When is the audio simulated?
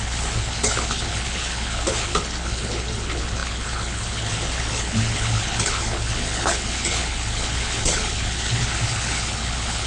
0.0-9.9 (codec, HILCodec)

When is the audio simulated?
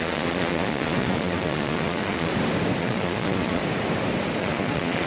0.0-2.3 (vocoder, Vocos); 2.8-3.6; 4.4-5.1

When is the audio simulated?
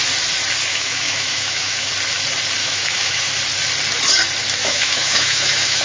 0.7-1.9 (autoencoder, DAC-VAE); 2.6-3.3; 4.6-5.8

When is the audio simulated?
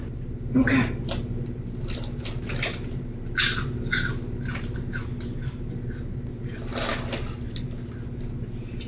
5.0-5.6 (codec, DAC)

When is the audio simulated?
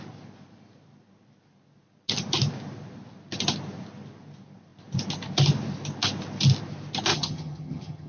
7.1-8.1 (vocoder, HiFi-GAN)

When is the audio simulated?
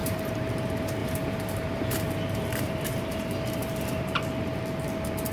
0.0-0.5 (vocoder, BigVGAN v2); 1.0-4.2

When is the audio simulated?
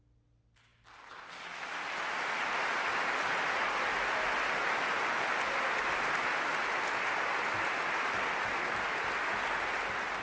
none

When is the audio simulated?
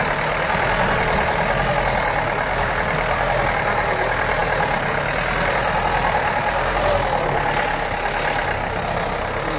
none